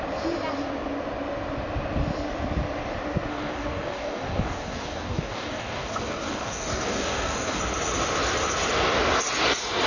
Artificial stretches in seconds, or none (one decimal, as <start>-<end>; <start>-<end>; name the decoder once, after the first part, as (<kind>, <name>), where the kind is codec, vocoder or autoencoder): 3.3-7.6 (codec, DAC)